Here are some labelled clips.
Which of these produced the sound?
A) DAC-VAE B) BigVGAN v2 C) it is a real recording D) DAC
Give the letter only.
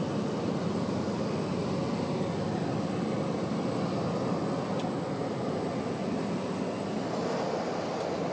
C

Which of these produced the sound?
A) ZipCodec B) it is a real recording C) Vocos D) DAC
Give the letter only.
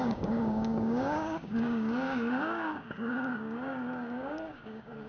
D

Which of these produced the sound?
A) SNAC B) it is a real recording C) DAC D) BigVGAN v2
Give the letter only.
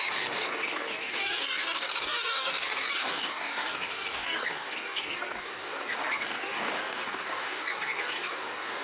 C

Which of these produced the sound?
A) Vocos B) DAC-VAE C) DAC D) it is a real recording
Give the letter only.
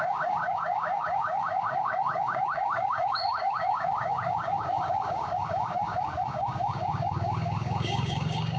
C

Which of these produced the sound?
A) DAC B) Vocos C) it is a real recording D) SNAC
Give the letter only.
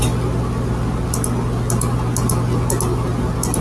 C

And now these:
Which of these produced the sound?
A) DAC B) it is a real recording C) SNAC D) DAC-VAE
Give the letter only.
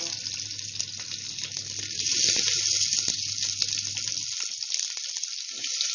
B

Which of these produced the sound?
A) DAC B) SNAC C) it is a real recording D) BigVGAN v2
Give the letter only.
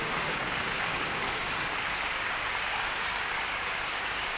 A